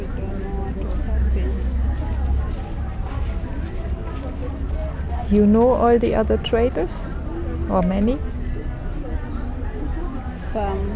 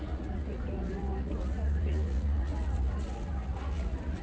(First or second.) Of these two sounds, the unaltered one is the first